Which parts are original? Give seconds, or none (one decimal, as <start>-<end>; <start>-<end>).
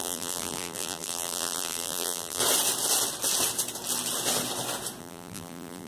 2.4-5.0